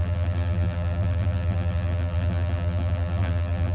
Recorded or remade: remade